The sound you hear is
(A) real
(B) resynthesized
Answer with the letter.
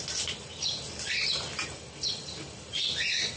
A